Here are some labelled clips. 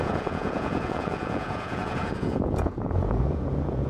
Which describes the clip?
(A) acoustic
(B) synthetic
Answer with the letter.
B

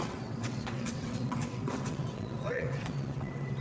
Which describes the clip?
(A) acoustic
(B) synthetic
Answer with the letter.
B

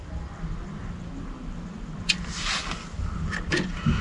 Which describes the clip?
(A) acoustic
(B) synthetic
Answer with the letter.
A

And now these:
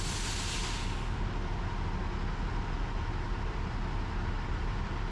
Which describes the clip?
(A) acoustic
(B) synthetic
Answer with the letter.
A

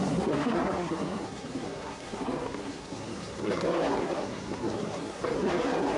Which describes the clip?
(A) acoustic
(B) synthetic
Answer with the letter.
B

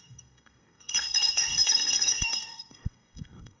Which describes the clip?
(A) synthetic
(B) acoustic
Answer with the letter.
A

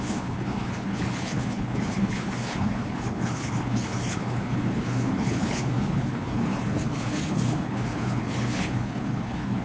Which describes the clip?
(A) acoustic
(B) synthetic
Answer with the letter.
B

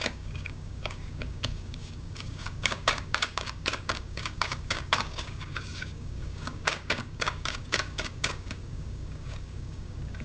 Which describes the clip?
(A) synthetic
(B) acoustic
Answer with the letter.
A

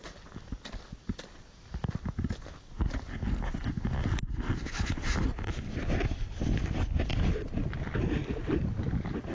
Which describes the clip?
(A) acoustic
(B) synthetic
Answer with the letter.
A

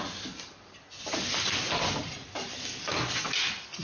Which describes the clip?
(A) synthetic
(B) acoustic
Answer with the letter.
B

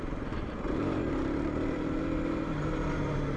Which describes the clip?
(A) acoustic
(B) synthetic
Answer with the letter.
B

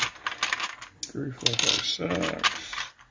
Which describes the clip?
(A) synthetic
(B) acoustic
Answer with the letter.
B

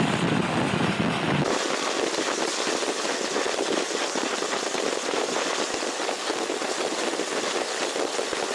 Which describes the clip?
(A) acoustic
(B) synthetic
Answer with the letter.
A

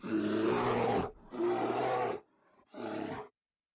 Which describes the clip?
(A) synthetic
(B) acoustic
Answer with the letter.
A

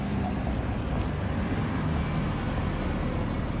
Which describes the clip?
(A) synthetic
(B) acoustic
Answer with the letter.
B